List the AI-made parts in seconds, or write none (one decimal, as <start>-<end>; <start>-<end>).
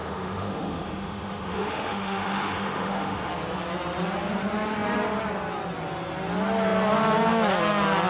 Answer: 0.0-3.3